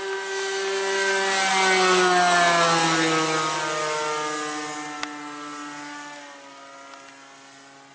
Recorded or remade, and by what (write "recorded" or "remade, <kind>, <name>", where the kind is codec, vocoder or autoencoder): recorded